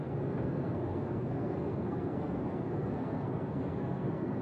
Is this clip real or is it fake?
fake